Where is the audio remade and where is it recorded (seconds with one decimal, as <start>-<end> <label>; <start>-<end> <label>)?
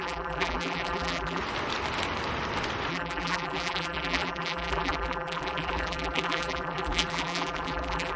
0.0-1.4 remade; 1.4-2.9 recorded; 2.9-8.2 remade